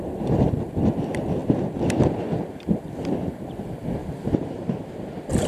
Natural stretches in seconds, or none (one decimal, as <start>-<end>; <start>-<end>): 0.0-4.0; 5.0-5.5